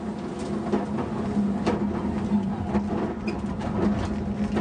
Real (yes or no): yes